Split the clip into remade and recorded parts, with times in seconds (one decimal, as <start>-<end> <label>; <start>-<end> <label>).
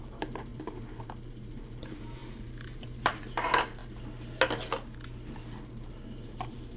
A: 0.0-3.8 remade; 3.8-5.7 recorded; 5.7-6.8 remade